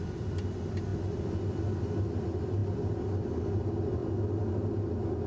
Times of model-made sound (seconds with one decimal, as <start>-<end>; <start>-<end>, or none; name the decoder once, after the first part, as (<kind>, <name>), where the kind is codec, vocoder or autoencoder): none